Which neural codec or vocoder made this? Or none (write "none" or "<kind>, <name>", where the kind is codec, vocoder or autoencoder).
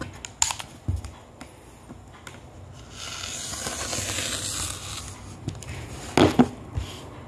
none